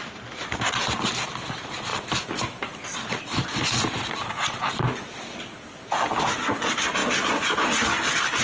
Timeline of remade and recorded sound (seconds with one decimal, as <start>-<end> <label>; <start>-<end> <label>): 0.0-1.9 recorded; 1.9-4.3 remade; 4.3-8.4 recorded